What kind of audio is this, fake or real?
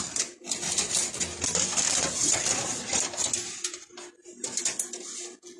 real